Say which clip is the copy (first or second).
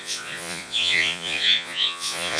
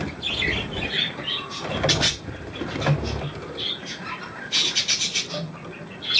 first